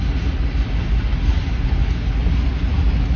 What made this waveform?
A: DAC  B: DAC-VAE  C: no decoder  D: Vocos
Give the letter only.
C